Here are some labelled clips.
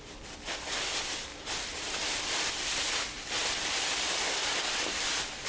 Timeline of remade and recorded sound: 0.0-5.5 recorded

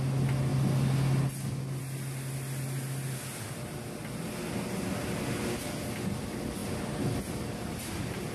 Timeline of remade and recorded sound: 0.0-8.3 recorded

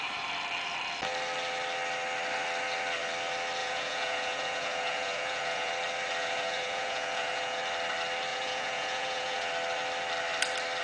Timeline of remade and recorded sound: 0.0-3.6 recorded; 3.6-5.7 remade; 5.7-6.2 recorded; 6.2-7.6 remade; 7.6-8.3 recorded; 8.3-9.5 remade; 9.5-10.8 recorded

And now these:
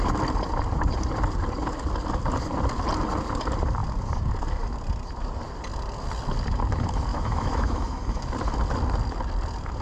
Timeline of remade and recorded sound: 0.0-7.1 recorded; 7.1-8.3 remade; 8.3-9.8 recorded

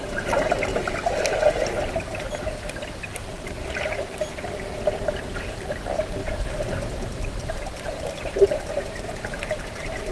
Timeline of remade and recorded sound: 0.0-0.7 remade; 0.7-5.6 recorded; 5.6-10.1 remade